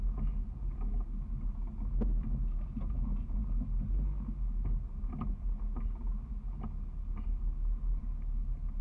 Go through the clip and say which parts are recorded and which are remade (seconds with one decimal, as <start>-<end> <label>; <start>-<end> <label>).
0.0-8.8 recorded